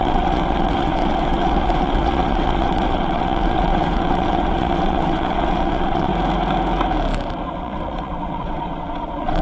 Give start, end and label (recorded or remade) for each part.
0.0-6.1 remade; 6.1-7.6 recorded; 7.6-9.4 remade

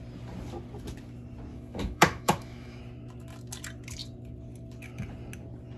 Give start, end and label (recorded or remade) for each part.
0.0-1.5 recorded; 1.5-2.8 remade; 2.8-5.8 recorded

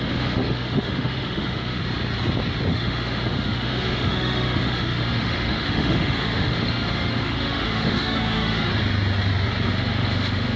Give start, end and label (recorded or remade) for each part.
0.0-1.8 remade; 1.8-2.7 recorded; 2.7-8.7 remade; 8.7-9.7 recorded; 9.7-10.6 remade

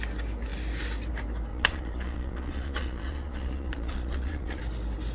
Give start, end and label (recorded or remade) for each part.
0.0-1.5 recorded; 1.5-4.6 remade; 4.6-5.1 recorded

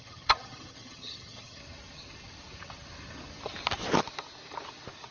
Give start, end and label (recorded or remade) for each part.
0.0-1.6 remade; 1.6-5.1 recorded

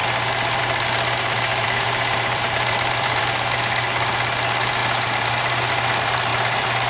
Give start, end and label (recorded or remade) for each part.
0.0-1.5 recorded; 1.5-3.2 remade; 3.2-4.8 recorded; 4.8-5.7 remade; 5.7-6.3 recorded; 6.3-6.9 remade

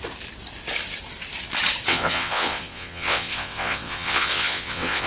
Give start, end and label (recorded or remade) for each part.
0.0-1.9 recorded; 1.9-5.1 remade